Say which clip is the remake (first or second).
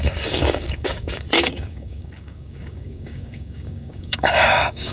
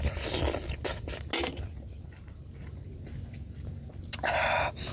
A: first